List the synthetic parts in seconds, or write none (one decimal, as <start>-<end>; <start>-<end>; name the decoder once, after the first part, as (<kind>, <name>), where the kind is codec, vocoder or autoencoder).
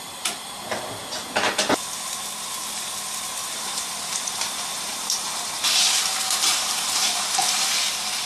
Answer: 1.0-1.5 (vocoder, BigVGAN v2); 3.4-7.7